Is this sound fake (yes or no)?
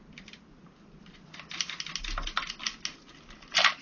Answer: no